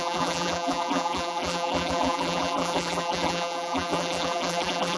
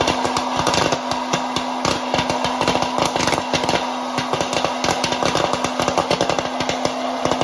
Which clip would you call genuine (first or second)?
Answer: second